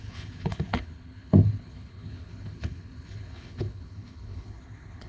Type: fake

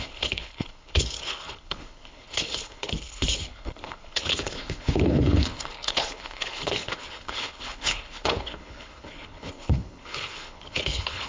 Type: fake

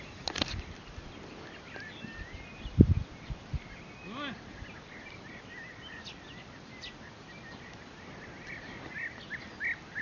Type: real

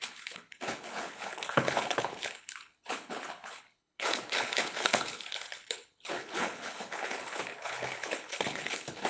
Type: fake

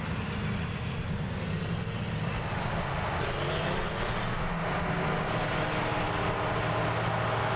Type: real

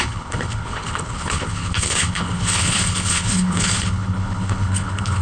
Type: fake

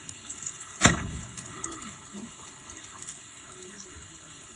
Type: fake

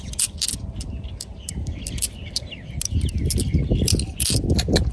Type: real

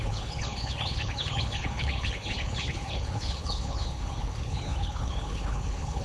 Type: fake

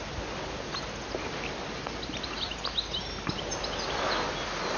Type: real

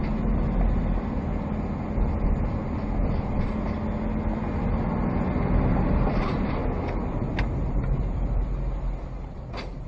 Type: real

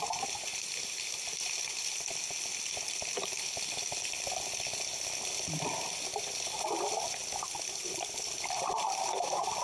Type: real